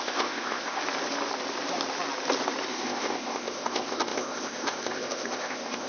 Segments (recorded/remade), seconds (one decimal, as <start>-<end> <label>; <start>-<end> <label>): 0.0-0.8 remade; 0.8-2.7 recorded; 2.7-5.9 remade